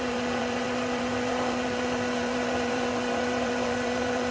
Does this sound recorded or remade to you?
remade